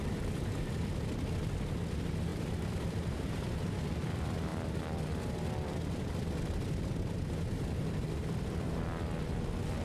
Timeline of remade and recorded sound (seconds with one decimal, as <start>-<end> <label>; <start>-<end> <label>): 0.0-9.8 recorded